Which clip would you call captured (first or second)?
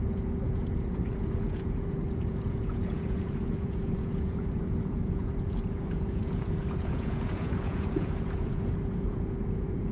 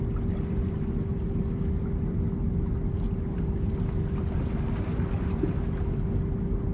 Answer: second